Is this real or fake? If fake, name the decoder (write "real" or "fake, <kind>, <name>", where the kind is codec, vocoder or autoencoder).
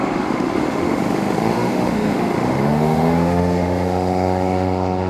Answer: fake, autoencoder, DAC-VAE